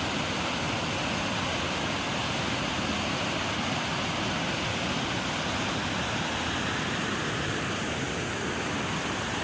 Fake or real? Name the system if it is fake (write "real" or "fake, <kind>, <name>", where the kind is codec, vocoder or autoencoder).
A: real